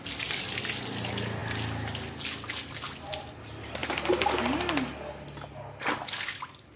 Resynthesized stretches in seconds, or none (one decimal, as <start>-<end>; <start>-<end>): none